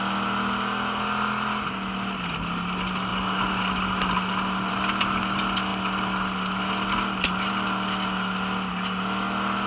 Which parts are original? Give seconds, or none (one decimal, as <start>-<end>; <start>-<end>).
0.0-9.7